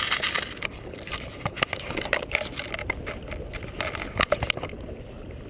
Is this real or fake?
fake